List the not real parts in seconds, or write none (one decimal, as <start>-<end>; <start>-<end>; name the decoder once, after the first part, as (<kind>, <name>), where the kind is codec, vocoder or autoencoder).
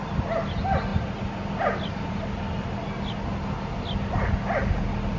none